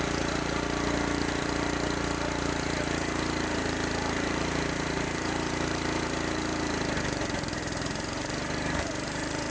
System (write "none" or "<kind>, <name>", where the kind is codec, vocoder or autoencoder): vocoder, BigVGAN v2